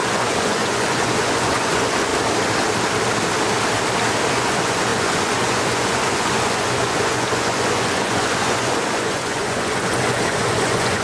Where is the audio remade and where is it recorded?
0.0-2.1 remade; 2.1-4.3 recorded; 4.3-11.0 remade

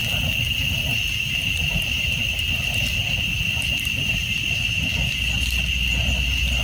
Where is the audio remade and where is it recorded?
0.0-6.6 recorded

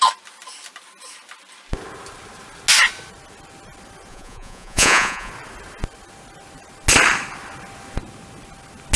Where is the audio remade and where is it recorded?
0.0-4.1 recorded; 4.1-5.3 remade; 5.3-9.0 recorded

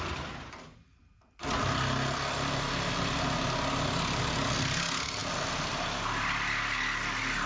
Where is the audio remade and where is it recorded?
0.0-7.5 recorded

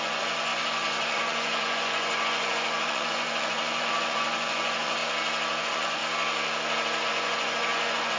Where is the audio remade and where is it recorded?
0.0-5.0 remade; 5.0-5.6 recorded; 5.6-6.0 remade; 6.0-7.1 recorded; 7.1-8.2 remade

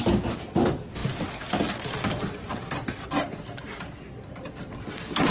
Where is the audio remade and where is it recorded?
0.0-5.3 recorded

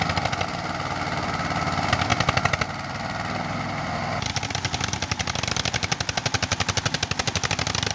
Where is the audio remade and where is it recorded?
0.0-7.9 recorded

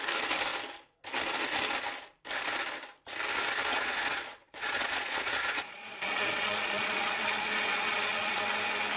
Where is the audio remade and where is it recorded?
0.0-3.7 recorded; 3.7-8.4 remade; 8.4-9.0 recorded